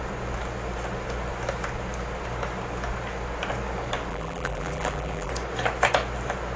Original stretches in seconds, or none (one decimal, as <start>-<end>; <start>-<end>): 0.0-4.1; 5.3-6.6